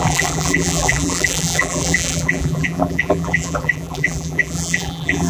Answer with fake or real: fake